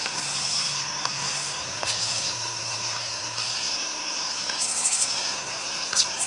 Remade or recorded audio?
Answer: remade